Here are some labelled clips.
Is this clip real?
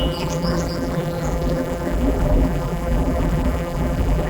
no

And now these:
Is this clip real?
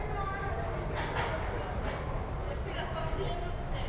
yes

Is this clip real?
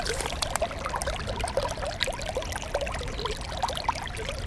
yes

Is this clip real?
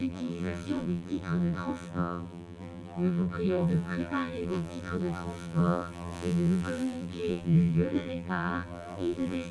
no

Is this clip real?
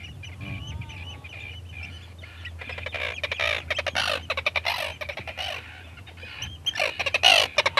yes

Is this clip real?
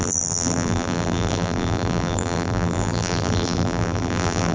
no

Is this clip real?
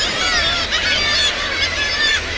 no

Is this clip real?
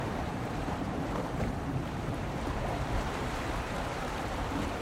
no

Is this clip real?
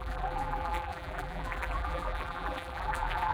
no